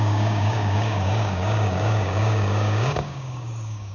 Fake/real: fake